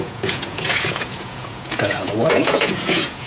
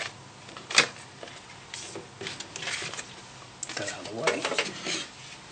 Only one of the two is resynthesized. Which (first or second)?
first